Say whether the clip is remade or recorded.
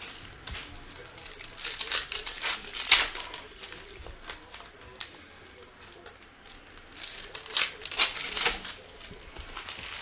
recorded